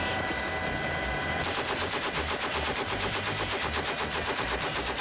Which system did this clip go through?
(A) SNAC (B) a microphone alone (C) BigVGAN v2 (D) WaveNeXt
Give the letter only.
C